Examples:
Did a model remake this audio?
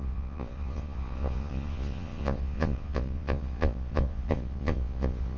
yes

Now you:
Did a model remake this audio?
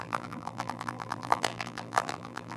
yes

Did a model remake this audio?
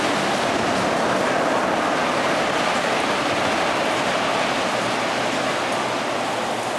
no